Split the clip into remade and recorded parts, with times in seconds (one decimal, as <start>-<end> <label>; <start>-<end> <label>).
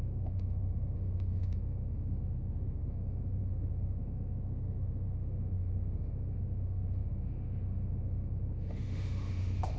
0.0-9.8 remade